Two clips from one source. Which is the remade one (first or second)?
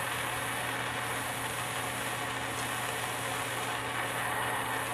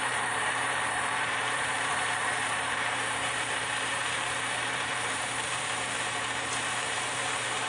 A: second